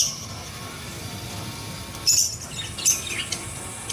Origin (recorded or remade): recorded